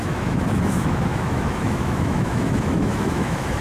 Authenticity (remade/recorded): remade